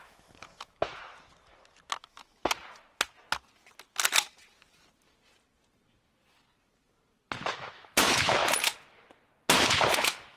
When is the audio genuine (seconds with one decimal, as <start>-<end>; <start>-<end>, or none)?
1.1-2.0; 2.4-7.5; 8.4-9.9